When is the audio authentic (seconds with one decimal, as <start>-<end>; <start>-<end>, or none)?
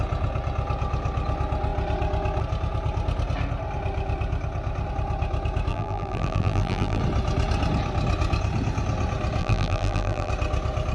0.0-5.7; 7.0-9.4; 10.3-10.9